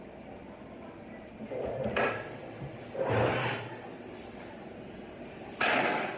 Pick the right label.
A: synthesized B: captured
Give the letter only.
B